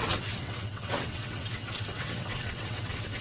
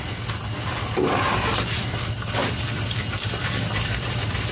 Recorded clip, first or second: second